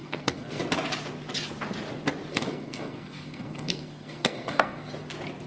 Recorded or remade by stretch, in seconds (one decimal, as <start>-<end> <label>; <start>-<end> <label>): 0.0-0.6 remade; 0.6-2.3 recorded; 2.3-4.9 remade; 4.9-5.5 recorded